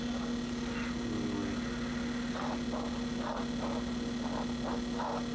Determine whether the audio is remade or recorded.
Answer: recorded